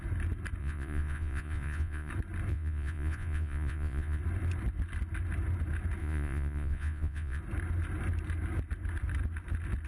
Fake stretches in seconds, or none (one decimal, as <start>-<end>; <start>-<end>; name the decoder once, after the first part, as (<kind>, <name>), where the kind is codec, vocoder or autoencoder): 0.6-2.1 (vocoder, Vocos); 2.5-4.2; 6.0-7.4